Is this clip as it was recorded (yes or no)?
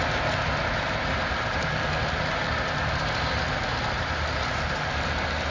yes